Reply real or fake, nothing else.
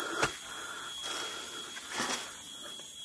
real